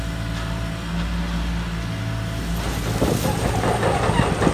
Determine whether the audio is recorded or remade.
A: recorded